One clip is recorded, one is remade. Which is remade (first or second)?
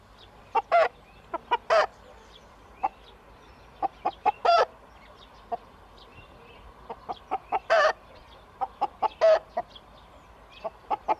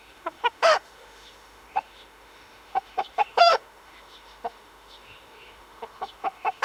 second